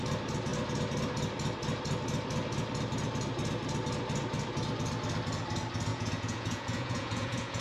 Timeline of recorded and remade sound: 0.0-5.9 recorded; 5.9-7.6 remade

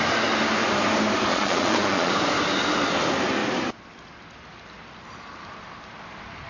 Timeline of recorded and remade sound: 0.0-1.3 recorded; 1.3-2.1 remade; 2.1-6.5 recorded

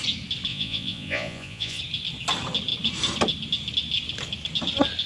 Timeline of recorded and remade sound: 0.0-0.5 recorded; 0.5-1.8 remade; 1.8-5.1 recorded

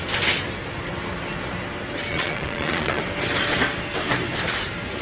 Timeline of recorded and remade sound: 0.0-2.1 recorded; 2.1-3.0 remade; 3.0-5.0 recorded